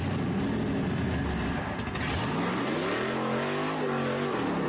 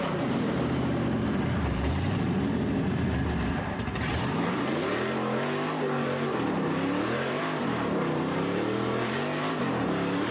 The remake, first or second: second